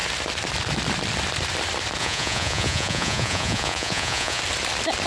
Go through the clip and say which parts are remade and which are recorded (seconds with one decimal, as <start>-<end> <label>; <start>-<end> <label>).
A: 0.0-2.0 recorded; 2.0-4.4 remade; 4.4-5.1 recorded